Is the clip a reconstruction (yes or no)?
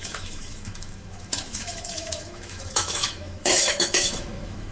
yes